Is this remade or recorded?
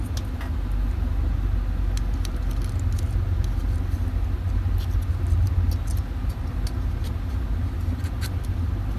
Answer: recorded